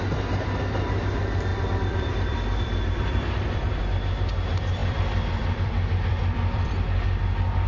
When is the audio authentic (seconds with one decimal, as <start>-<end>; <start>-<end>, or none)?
0.0-1.5; 3.8-4.8